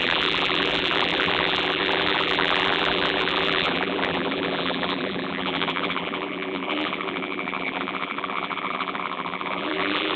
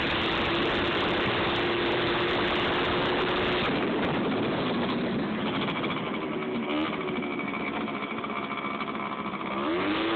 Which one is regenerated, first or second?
first